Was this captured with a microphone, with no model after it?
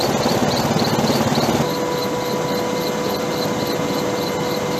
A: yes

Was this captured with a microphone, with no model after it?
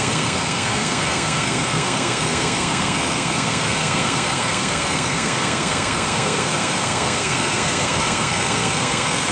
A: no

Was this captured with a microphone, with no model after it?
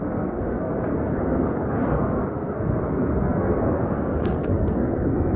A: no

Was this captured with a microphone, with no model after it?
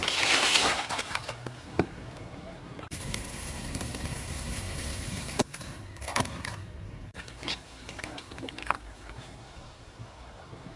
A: no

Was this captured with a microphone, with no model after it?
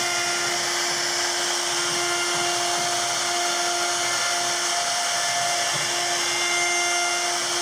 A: yes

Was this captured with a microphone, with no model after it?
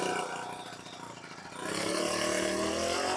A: yes